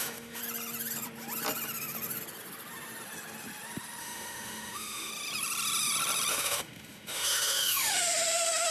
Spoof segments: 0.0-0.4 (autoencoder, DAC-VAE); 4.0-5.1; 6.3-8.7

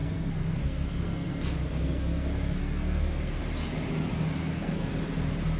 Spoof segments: 0.0-3.4 (codec, SNAC); 4.4-4.9

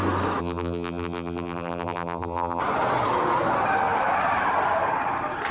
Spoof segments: 0.4-2.6 (vocoder, BigVGAN v2)

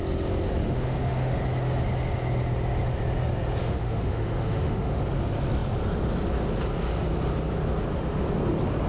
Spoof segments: 0.6-1.4 (autoencoder, DAC-VAE); 3.6-5.0

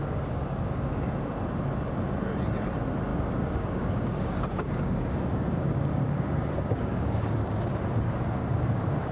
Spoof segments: 0.0-1.3 (codec, DAC); 3.1-7.8; 8.4-9.1

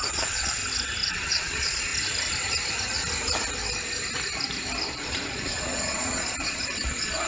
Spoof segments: 0.0-0.6 (vocoder, Vocos); 1.1-1.9; 4.9-7.3

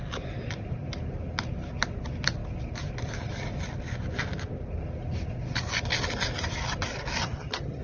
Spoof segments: 7.2-7.8 (vocoder, HiFi-GAN)